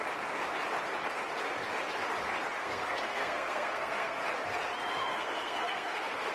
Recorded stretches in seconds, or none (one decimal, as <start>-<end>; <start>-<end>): 0.0-2.6; 4.2-5.1